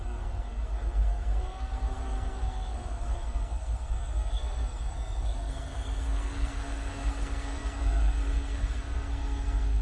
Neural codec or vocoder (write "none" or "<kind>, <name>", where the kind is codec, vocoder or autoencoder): codec, SNAC